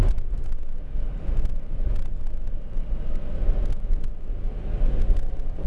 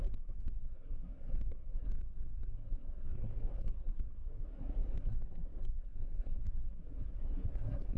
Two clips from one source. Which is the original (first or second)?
first